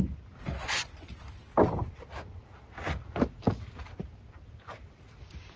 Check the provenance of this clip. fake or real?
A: real